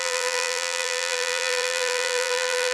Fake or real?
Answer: fake